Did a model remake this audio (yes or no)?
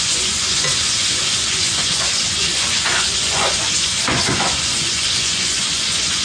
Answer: yes